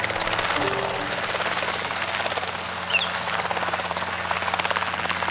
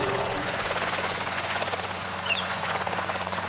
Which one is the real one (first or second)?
first